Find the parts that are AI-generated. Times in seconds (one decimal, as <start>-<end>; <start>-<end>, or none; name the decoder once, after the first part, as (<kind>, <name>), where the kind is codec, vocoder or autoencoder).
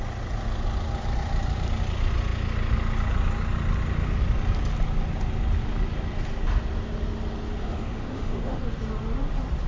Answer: 7.6-8.6 (autoencoder, DAC-VAE)